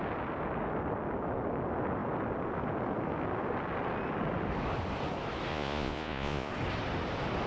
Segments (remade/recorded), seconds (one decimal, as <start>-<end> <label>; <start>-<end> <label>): 0.0-5.5 recorded; 5.5-6.5 remade; 6.5-7.5 recorded